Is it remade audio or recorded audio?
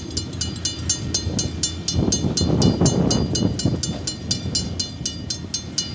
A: recorded